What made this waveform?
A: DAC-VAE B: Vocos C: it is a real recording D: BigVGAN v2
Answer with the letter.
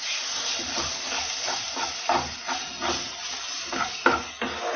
C